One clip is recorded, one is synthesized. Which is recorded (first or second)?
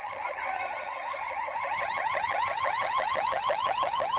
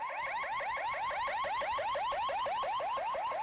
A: second